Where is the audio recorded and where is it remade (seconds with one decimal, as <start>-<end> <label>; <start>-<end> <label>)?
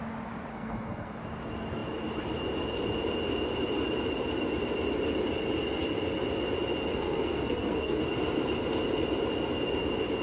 0.0-0.5 recorded; 0.5-1.2 remade; 1.2-6.9 recorded; 6.9-8.0 remade; 8.0-10.2 recorded